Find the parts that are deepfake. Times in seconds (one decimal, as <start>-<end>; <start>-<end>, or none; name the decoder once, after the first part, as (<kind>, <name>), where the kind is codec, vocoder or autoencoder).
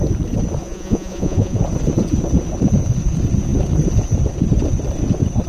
0.6-1.6 (vocoder, Vocos)